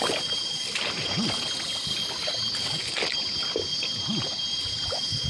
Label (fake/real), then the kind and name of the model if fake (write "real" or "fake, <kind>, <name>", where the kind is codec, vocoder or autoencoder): real